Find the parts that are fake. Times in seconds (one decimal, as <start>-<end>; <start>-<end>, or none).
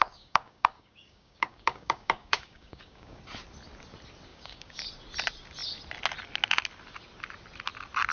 0.0-3.2; 4.3-4.9